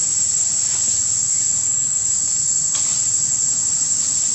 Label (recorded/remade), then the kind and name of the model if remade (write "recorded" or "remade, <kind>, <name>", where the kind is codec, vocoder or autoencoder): recorded